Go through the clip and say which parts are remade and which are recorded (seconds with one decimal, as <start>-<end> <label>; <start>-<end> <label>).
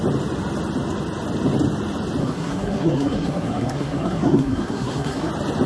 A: 0.0-2.2 recorded; 2.2-5.3 remade; 5.3-5.7 recorded